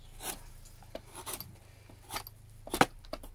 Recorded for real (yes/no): yes